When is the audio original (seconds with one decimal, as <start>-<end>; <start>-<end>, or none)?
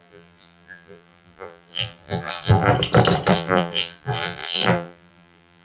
2.7-3.3